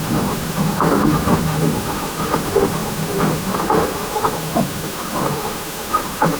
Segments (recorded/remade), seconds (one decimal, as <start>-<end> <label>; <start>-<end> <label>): 0.0-6.4 remade